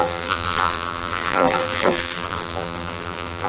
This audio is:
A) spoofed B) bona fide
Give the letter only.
A